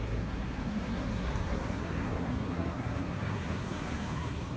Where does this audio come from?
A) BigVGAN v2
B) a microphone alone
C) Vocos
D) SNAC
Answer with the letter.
D